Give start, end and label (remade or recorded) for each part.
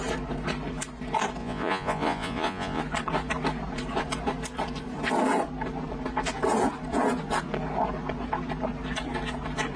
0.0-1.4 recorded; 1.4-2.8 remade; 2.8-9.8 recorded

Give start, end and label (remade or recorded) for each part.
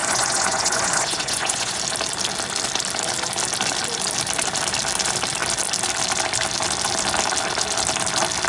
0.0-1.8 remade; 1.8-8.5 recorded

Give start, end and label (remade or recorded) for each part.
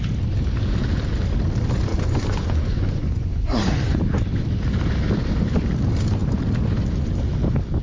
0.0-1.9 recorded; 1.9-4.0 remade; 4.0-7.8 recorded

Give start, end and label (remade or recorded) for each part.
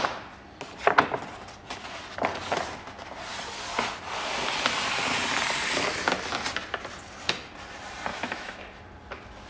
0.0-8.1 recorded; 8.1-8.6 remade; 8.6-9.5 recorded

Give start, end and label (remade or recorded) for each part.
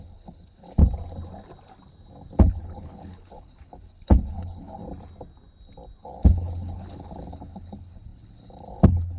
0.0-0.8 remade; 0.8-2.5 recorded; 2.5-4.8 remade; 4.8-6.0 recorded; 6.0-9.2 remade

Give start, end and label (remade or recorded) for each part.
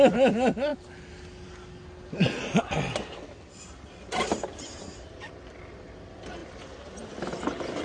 0.0-7.8 recorded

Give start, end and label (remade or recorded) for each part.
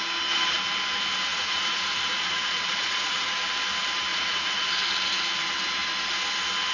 0.0-1.3 recorded; 1.3-3.3 remade; 3.3-4.1 recorded; 4.1-4.7 remade; 4.7-6.7 recorded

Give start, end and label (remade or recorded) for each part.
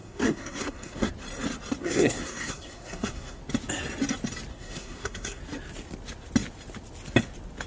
0.0-1.1 remade; 1.1-1.8 recorded; 1.8-3.4 remade; 3.4-4.5 recorded; 4.5-5.4 remade; 5.4-7.7 recorded